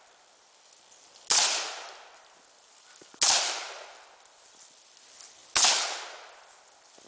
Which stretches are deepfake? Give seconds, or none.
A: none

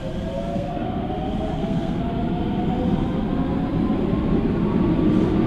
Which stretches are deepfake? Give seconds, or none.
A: 0.5-1.1 (codec, SNAC); 1.5-2.0

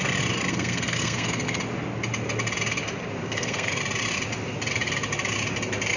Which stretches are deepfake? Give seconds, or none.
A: 0.5-1.6 (codec, SNAC); 3.2-3.8

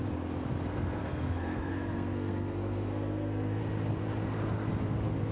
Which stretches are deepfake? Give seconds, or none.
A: 0.7-3.6 (codec, SNAC)

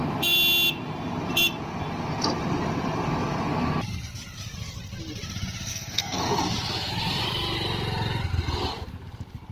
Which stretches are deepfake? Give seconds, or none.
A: 5.7-6.4 (codec, SNAC)

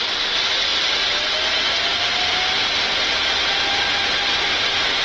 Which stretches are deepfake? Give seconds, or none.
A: none

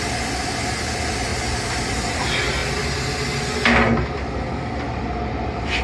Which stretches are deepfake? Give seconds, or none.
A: none

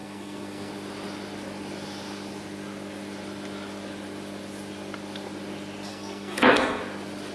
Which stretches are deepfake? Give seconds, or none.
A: 0.0-0.7 (codec, SNAC); 5.9-6.8